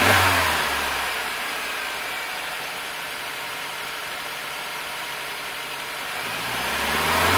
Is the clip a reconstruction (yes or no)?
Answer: yes